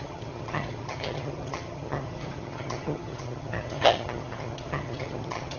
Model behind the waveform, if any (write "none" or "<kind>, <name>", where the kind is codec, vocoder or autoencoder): vocoder, HiFi-GAN